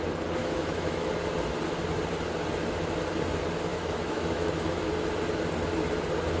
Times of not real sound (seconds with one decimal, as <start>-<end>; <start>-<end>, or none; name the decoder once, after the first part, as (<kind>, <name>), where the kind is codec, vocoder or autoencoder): 0.4-1.1 (autoencoder, DAC-VAE); 3.7-4.9